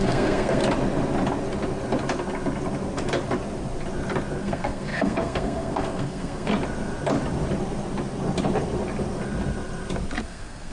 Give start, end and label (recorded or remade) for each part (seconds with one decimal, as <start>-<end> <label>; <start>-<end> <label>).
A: 0.0-0.6 remade; 0.6-4.4 recorded; 4.4-6.5 remade; 6.5-10.2 recorded; 10.2-10.7 remade